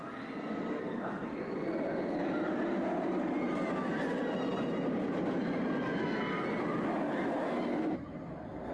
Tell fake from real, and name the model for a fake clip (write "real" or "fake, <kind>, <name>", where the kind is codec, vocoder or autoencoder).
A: real